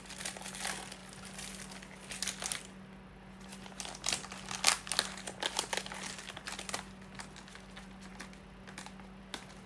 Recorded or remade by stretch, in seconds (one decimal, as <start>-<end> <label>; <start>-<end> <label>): 0.0-9.7 recorded